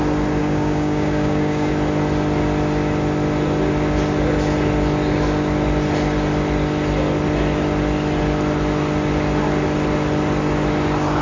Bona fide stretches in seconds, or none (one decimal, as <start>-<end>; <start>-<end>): 0.0-0.4; 1.7-11.2